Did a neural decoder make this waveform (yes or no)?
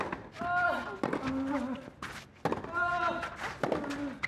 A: no